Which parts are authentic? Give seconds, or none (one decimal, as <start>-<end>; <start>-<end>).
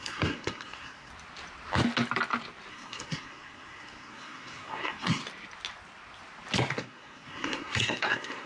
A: 1.1-2.7; 5.2-6.7